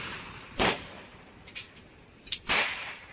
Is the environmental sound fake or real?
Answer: fake